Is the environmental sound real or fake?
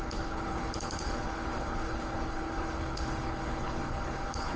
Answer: fake